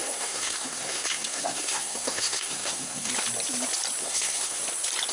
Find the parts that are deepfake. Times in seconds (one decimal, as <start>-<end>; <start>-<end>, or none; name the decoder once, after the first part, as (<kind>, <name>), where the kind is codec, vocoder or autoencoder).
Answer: 0.0-3.1 (codec, SNAC); 4.0-4.6